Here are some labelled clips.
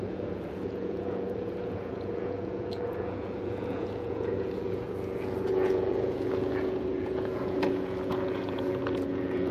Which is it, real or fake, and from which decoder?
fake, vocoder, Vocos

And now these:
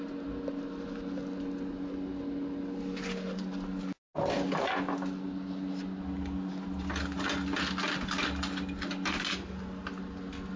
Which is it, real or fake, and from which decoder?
real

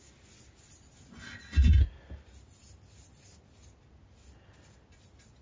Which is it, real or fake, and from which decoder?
real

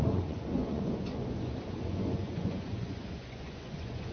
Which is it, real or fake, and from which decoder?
fake, vocoder, Vocos